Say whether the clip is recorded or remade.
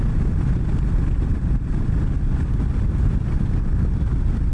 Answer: recorded